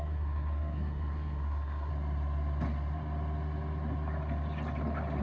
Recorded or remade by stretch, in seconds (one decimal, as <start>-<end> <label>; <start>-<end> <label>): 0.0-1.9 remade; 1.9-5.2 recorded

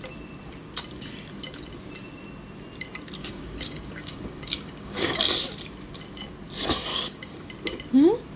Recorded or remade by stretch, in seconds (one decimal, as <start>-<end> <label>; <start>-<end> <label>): 0.0-3.2 recorded; 3.2-5.2 remade; 5.2-6.9 recorded; 6.9-7.5 remade; 7.5-8.4 recorded

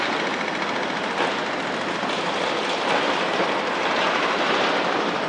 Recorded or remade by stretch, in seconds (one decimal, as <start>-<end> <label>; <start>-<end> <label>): 0.0-5.3 recorded

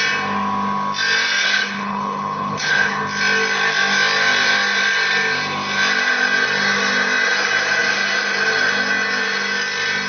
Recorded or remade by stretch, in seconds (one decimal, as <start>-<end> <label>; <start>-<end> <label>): 0.0-1.4 recorded; 1.4-3.0 remade; 3.0-10.1 recorded

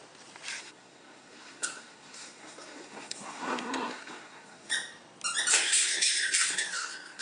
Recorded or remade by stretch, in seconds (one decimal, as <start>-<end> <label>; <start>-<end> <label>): 0.0-0.6 recorded; 0.6-4.7 remade; 4.7-5.5 recorded; 5.5-7.2 remade